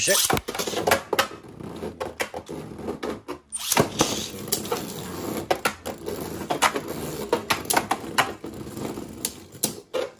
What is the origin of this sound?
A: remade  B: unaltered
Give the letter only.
B